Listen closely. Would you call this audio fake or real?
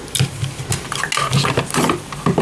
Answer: real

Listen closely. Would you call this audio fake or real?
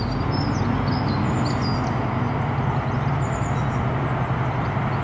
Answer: real